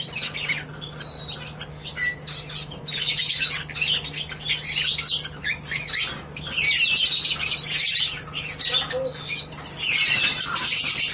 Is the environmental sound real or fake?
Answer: real